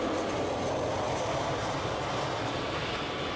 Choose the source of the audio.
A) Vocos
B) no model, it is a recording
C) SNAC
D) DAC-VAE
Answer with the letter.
B